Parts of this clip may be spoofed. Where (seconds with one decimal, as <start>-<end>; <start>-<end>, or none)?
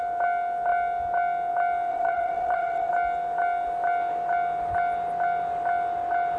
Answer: 1.9-2.9